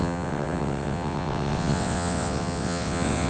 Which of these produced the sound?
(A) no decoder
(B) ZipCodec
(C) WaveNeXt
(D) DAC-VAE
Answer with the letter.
C